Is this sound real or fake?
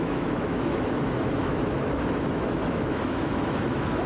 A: fake